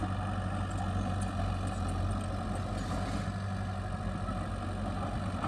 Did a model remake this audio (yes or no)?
no